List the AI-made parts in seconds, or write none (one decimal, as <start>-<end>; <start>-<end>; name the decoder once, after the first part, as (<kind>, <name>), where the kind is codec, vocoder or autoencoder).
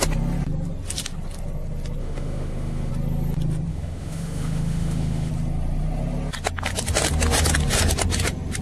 2.0-2.9 (autoencoder, DAC-VAE); 3.7-5.3